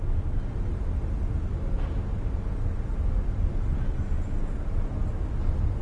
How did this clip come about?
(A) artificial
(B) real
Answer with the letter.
B